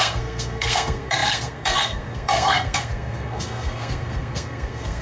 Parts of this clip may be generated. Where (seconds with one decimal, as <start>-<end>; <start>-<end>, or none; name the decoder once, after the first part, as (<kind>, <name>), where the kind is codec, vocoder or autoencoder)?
0.0-5.0 (codec, SNAC)